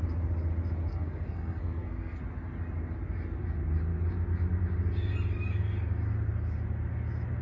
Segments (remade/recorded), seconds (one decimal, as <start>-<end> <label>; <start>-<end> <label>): 0.0-0.9 recorded; 0.9-2.2 remade; 2.2-7.4 recorded